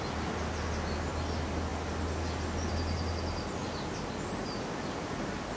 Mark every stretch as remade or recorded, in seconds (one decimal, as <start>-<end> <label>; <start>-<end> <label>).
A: 0.0-5.6 recorded